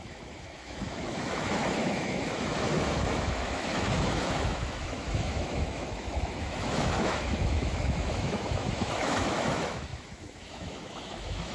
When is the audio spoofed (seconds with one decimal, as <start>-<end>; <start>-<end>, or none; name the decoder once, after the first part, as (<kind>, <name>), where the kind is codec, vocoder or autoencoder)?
0.0-11.5 (autoencoder, DAC-VAE)